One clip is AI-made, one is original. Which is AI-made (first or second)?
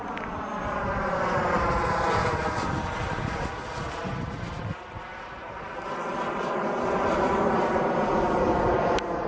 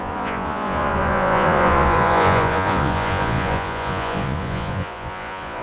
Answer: second